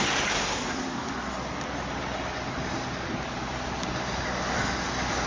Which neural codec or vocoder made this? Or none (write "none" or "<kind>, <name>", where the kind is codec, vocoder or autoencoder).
none